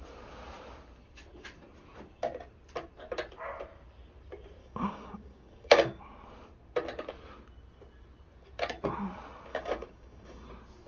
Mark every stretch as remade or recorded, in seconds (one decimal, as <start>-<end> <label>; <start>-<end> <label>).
0.0-4.6 recorded; 4.6-6.0 remade; 6.0-9.5 recorded; 9.5-10.5 remade; 10.5-10.9 recorded

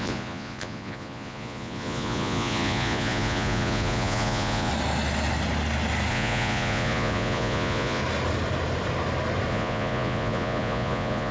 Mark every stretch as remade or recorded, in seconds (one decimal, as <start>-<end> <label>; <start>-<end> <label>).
0.0-4.7 remade; 4.7-6.1 recorded; 6.1-8.0 remade; 8.0-9.5 recorded; 9.5-11.3 remade

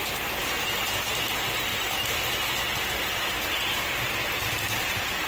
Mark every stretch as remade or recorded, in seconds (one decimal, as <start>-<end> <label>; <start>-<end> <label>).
0.0-1.7 remade; 1.7-4.6 recorded; 4.6-5.3 remade